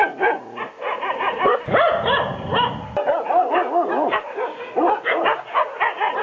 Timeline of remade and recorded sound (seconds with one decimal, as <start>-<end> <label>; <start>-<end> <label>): 0.0-6.2 recorded